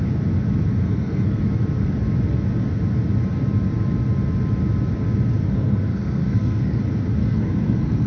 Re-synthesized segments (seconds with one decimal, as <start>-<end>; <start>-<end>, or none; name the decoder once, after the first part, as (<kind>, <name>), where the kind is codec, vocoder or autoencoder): 0.8-1.4 (codec, SNAC); 5.4-6.8; 7.2-8.1